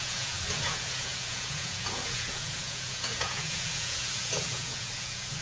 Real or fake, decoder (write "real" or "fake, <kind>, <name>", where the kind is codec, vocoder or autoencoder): fake, vocoder, Vocos